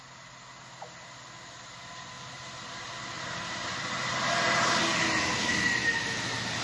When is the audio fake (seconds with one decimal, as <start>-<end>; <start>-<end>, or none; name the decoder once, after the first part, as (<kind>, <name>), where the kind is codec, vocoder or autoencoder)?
none